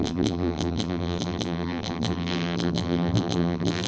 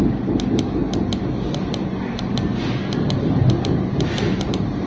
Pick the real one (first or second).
second